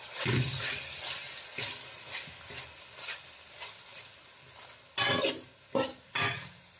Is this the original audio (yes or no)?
yes